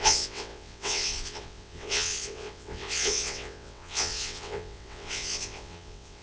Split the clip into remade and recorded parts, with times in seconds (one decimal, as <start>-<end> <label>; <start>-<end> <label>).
0.0-6.2 remade